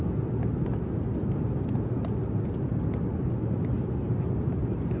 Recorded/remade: recorded